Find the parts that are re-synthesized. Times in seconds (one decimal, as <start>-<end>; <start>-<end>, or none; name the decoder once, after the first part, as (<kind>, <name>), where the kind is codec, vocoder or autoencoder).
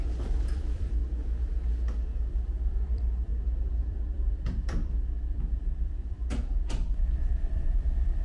0.0-1.0 (vocoder, BigVGAN v2); 2.2-3.3; 3.9-8.2